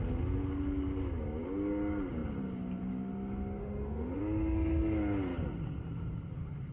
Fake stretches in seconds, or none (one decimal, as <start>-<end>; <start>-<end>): 3.6-4.2

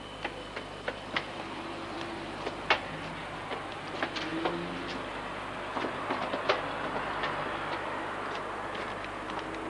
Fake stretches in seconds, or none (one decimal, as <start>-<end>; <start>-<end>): none